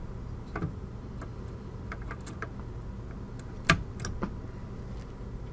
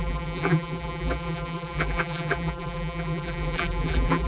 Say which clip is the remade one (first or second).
second